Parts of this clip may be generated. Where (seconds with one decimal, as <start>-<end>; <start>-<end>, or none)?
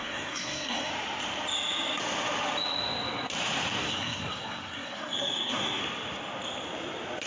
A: 0.0-0.9; 3.8-5.8